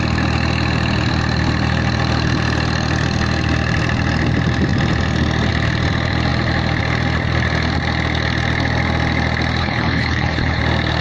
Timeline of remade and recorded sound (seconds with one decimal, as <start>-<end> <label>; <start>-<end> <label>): 0.0-9.6 recorded; 9.6-10.6 remade; 10.6-11.0 recorded